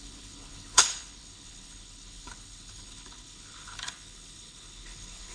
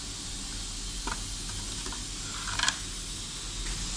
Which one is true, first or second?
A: second